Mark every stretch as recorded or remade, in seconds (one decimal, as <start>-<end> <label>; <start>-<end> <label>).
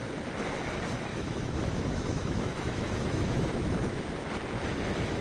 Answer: 0.0-1.1 recorded; 1.1-4.2 remade; 4.2-5.2 recorded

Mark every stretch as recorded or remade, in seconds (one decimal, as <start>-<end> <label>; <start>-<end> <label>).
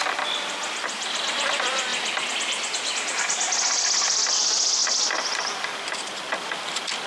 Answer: 0.0-7.1 recorded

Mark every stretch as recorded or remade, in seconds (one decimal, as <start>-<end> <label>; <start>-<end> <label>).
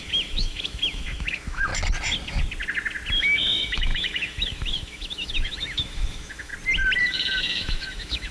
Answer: 0.0-1.7 remade; 1.7-3.2 recorded; 3.2-6.5 remade; 6.5-7.0 recorded; 7.0-8.3 remade